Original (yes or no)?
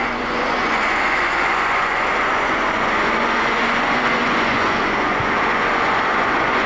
no